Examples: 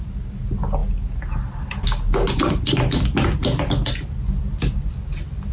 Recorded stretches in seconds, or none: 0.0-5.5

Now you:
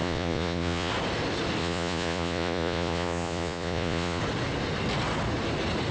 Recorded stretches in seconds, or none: 0.9-1.6; 4.2-5.9

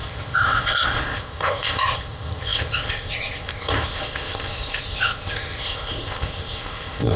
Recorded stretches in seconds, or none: none

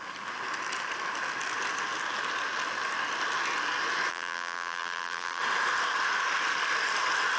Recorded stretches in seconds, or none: 0.0-4.1; 5.4-7.4

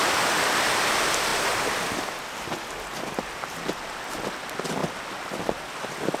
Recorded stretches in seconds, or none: 0.0-6.2

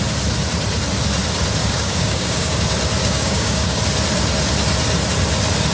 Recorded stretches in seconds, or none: 0.0-1.6; 2.6-3.0; 3.8-5.7